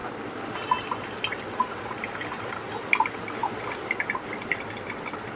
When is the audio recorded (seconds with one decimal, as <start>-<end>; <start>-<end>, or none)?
0.0-3.4; 4.0-5.4